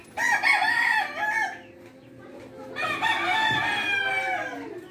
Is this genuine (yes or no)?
yes